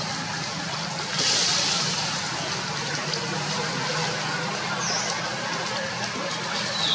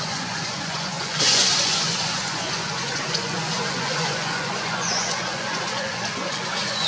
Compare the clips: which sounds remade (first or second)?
second